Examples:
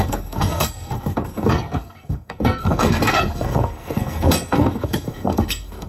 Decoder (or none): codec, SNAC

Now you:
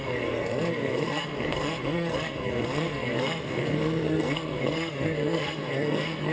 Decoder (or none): codec, SNAC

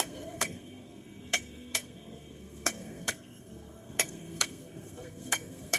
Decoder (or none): codec, SNAC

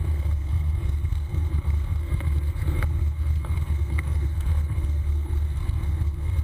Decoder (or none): codec, SNAC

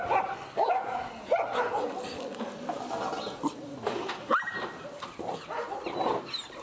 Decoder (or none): none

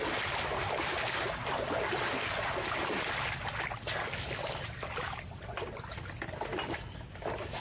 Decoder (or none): none